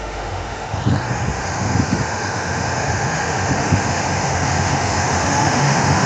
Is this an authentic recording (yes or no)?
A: no